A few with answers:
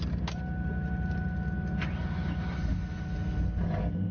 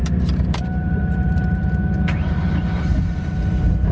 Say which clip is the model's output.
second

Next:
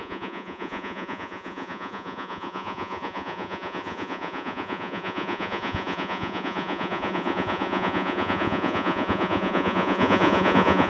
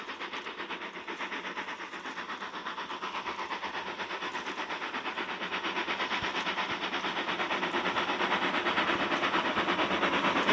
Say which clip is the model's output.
first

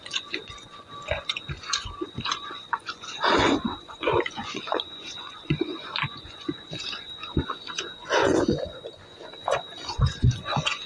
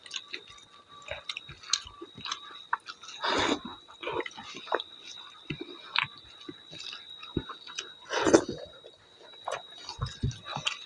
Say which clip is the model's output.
first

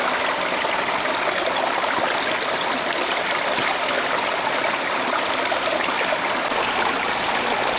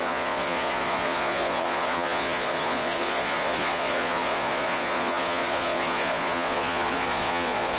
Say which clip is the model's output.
second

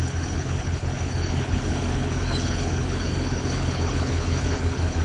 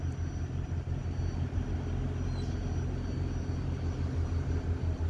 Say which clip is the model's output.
first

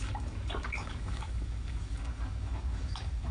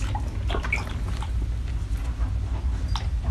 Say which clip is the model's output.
first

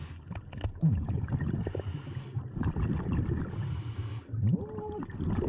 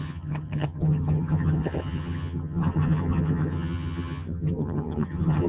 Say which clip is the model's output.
second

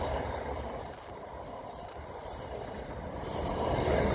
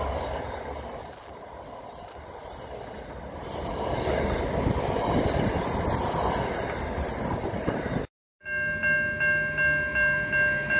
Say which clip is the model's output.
first